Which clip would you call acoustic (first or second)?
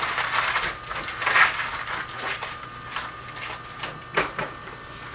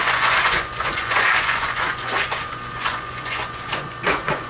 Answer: first